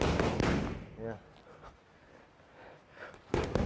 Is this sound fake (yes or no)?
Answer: no